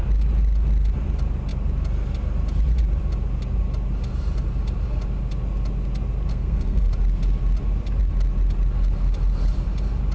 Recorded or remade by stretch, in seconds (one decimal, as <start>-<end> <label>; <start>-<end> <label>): 0.0-6.3 recorded; 6.3-6.9 remade; 6.9-10.1 recorded